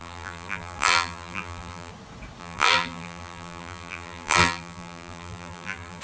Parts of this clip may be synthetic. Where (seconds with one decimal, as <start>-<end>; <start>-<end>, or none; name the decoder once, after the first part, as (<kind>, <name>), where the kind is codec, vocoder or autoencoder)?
0.0-1.9 (vocoder, BigVGAN v2); 2.4-6.0